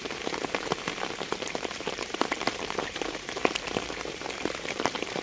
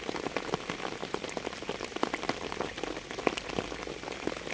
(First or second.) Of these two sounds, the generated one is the first